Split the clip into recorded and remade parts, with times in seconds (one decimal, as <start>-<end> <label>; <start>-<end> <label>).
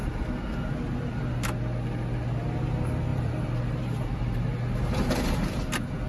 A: 0.0-3.1 recorded; 3.1-4.3 remade; 4.3-6.1 recorded